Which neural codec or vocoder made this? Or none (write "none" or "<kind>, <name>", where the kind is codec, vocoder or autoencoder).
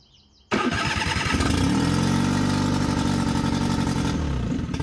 none